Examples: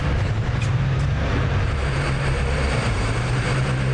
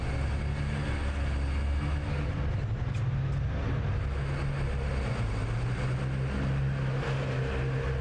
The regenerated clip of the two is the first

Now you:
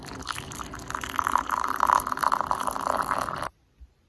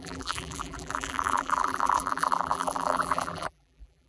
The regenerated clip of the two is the second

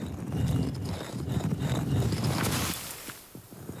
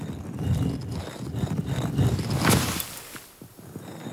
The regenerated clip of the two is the first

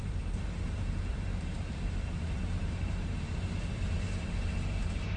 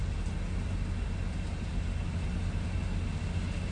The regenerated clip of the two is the first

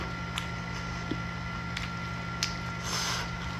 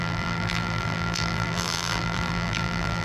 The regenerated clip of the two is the second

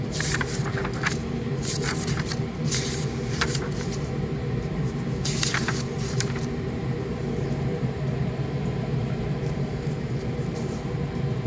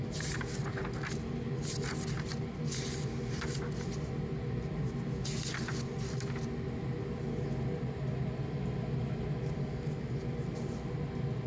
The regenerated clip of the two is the first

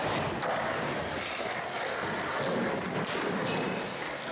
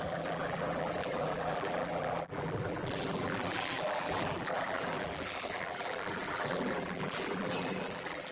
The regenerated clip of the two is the second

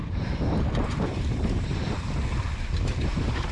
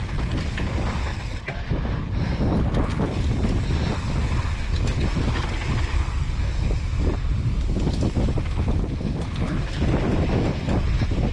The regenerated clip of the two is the first